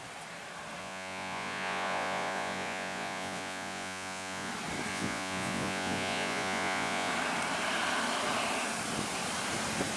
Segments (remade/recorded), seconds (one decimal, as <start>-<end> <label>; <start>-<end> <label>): 0.0-0.8 recorded; 0.8-4.5 remade; 4.5-4.9 recorded; 4.9-7.1 remade; 7.1-10.0 recorded